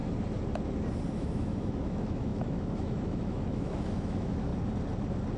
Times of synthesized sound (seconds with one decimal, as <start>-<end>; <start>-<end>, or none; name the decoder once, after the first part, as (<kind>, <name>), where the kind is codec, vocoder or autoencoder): 1.1-4.5 (autoencoder, DAC-VAE)